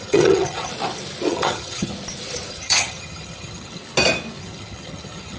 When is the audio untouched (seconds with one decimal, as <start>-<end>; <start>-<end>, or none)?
0.7-1.3; 1.9-2.5; 3.8-4.4